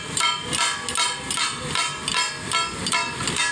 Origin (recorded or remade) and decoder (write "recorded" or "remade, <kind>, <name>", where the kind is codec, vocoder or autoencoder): recorded